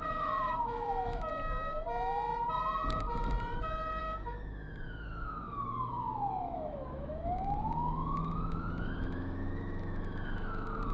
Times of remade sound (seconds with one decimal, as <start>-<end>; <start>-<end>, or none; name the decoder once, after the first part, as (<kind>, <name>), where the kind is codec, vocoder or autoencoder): 0.0-1.3 (autoencoder, DAC-VAE); 4.0-10.9